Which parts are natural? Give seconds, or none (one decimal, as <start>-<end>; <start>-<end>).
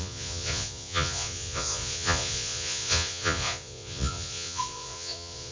none